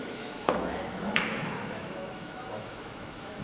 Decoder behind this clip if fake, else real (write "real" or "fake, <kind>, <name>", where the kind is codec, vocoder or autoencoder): fake, autoencoder, DAC-VAE